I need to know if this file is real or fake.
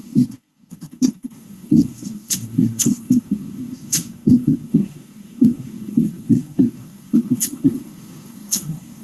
fake